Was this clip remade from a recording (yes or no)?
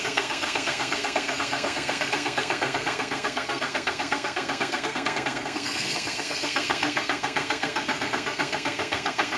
yes